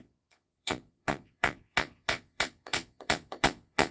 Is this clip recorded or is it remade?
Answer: remade